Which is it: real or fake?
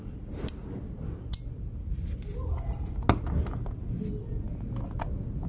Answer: real